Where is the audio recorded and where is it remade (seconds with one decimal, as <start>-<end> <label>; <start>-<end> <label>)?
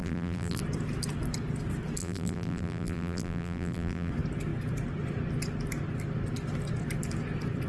0.0-0.6 remade; 0.6-2.0 recorded; 2.0-4.1 remade; 4.1-7.7 recorded